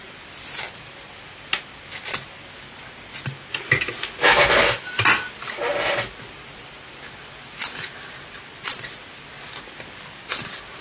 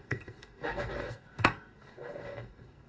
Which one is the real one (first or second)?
first